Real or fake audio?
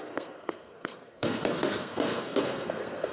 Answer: fake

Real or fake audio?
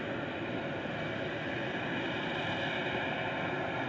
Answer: real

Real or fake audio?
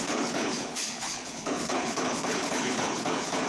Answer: fake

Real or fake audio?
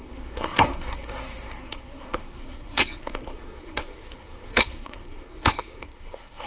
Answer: fake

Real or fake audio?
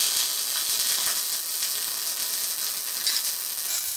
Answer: real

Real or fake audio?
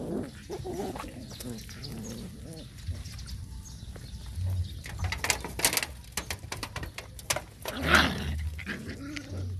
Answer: real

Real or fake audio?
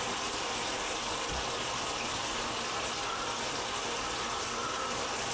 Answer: real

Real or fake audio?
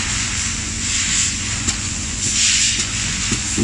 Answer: fake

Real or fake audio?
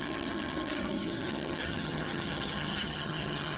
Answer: fake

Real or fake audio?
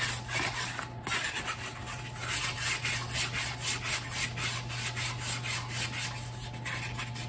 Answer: real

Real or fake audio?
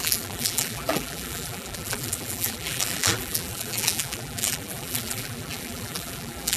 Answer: fake